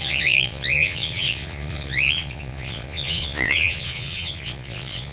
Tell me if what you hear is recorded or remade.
remade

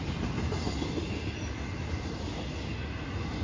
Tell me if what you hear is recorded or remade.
recorded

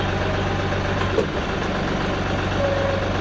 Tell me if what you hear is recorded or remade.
recorded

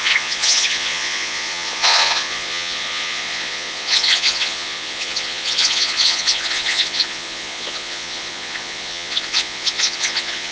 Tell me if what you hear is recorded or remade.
remade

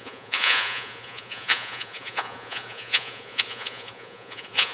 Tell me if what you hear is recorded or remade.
remade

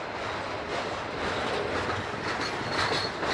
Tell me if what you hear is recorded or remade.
recorded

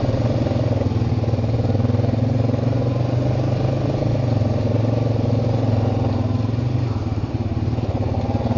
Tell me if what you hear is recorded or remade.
recorded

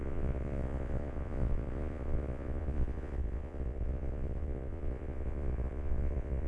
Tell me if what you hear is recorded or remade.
remade